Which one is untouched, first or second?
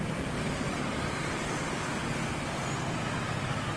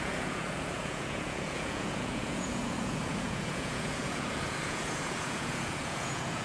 first